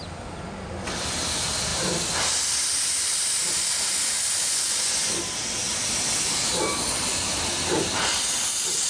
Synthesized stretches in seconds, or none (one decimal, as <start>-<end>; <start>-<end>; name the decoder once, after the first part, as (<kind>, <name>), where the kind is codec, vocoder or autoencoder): 4.4-5.2 (vocoder, Vocos)